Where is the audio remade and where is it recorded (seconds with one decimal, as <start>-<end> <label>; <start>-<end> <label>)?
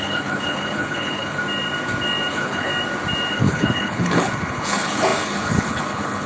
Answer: 0.0-1.4 remade; 1.4-2.3 recorded; 2.3-2.7 remade; 2.7-3.3 recorded; 3.3-6.3 remade